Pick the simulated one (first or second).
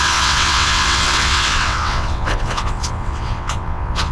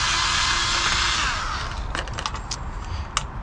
first